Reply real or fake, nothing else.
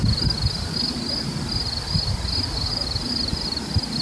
real